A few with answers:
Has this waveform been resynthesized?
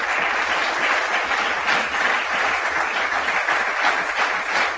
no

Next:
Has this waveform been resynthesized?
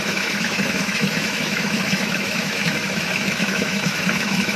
yes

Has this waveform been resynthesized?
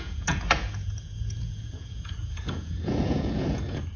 yes